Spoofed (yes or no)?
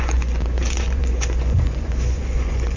yes